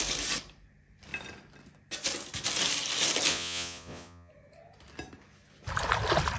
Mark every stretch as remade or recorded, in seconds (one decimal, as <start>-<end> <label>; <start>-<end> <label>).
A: 0.0-3.3 recorded; 3.3-4.3 remade; 4.3-6.4 recorded